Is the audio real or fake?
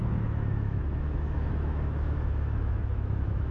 fake